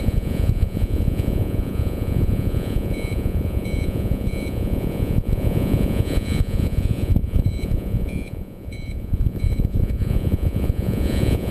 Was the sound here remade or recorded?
remade